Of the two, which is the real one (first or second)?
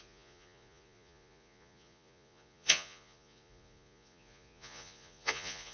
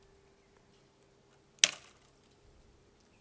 second